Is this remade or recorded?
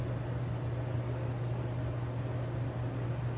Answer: recorded